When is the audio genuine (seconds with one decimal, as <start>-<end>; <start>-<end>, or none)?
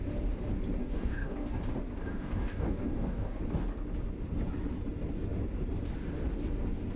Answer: 0.0-0.8; 1.6-2.1; 3.4-7.0